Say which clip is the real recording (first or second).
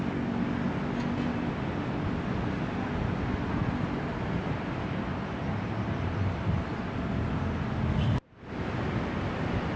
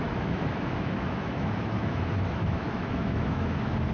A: first